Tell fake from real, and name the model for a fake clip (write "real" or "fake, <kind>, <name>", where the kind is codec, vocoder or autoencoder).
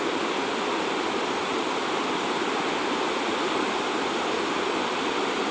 real